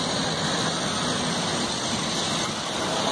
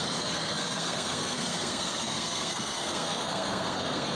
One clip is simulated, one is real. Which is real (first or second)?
first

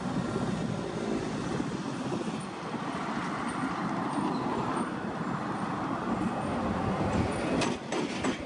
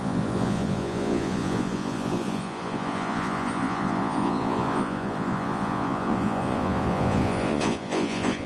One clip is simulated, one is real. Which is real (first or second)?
first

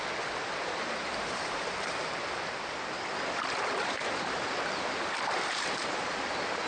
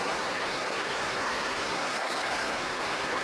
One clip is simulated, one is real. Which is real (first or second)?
first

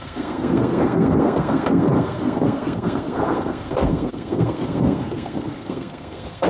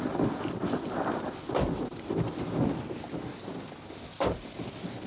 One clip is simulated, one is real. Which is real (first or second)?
second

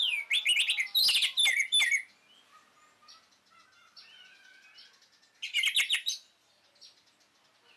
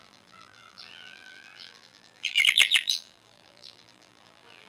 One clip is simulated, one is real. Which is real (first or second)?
first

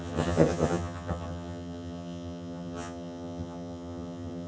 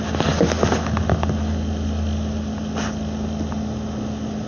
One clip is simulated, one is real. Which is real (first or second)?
second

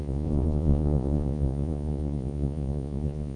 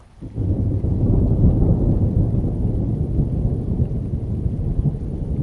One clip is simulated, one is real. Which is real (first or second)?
second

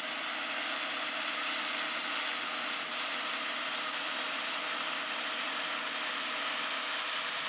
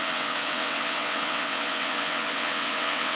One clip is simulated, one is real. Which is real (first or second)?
first